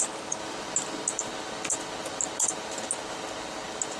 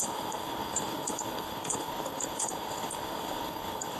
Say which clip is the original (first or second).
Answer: first